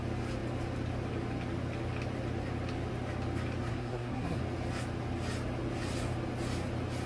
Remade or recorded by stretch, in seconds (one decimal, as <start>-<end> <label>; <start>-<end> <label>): 0.0-3.7 recorded; 3.7-4.4 remade; 4.4-7.1 recorded

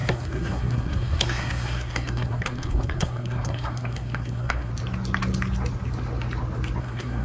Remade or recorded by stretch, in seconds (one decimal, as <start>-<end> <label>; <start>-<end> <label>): 0.0-4.7 remade; 4.7-6.8 recorded; 6.8-7.2 remade

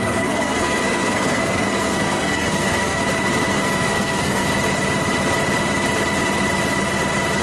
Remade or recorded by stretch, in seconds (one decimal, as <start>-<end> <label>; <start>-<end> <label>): 0.0-3.0 remade; 3.0-3.5 recorded; 3.5-4.5 remade; 4.5-7.4 recorded

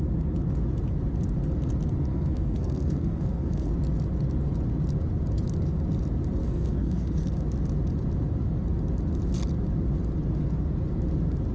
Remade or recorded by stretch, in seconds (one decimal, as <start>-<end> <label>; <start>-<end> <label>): 0.0-2.1 recorded; 2.1-3.7 remade; 3.7-6.4 recorded; 6.4-7.4 remade; 7.4-11.5 recorded

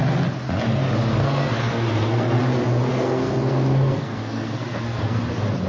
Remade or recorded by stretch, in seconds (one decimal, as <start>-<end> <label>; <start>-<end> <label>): 0.0-1.1 recorded; 1.1-2.4 remade; 2.4-2.9 recorded; 2.9-5.2 remade; 5.2-5.7 recorded